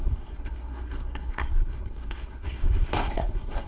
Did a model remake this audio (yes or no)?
yes